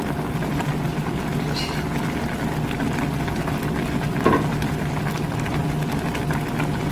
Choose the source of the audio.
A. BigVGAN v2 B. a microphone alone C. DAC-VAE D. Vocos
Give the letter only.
B